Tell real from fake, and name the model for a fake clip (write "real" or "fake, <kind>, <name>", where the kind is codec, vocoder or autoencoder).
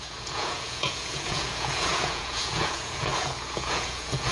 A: fake, vocoder, Vocos